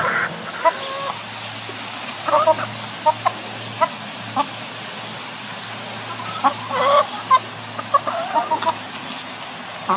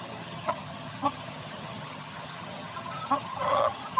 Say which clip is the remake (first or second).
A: second